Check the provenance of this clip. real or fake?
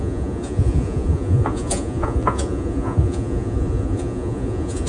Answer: fake